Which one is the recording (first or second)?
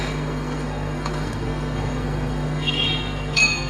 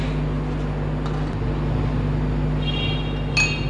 second